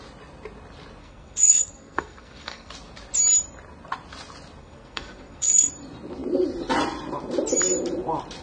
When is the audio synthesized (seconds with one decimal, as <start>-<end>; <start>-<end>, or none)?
1.0-2.7; 4.6-5.7